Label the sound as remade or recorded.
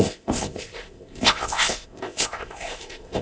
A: remade